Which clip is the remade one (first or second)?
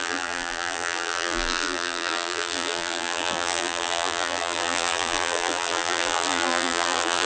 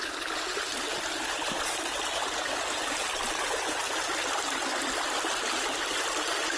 first